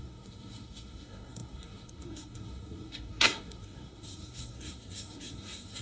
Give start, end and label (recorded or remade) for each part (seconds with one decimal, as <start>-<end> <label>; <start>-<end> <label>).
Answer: 0.0-5.8 remade